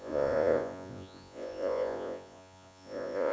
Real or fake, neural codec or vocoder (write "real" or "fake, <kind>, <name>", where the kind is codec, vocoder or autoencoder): fake, vocoder, Vocos